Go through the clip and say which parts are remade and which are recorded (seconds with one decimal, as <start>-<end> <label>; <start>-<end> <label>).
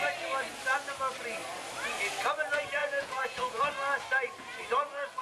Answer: 0.0-2.8 recorded; 2.8-3.6 remade; 3.6-5.2 recorded